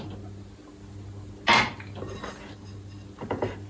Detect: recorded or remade recorded